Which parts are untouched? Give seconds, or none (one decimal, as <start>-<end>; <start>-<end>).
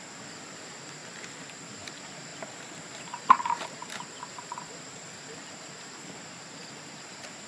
1.0-1.9; 3.8-4.3